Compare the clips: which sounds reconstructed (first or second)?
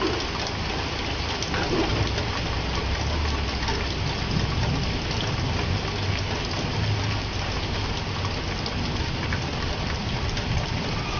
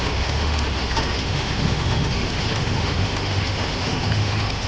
second